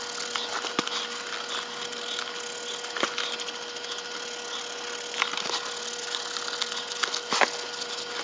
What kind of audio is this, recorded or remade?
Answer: recorded